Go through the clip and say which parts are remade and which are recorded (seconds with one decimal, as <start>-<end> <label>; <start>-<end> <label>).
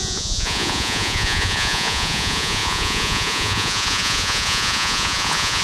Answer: 0.0-5.6 remade